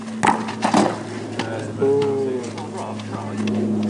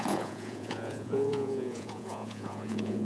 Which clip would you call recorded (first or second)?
first